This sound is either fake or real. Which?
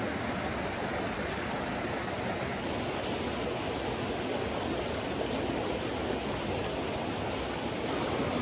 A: real